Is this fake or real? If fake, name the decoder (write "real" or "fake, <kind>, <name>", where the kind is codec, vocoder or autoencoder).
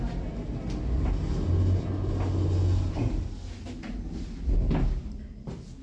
real